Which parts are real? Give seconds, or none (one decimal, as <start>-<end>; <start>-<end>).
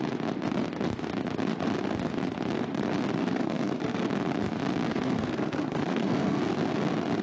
0.0-3.2; 4.1-4.9; 6.4-7.2